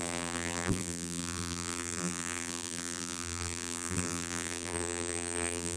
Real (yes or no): no